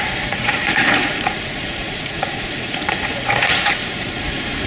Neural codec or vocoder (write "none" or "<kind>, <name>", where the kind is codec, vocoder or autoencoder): vocoder, Vocos